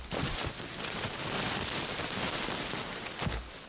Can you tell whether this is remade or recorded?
recorded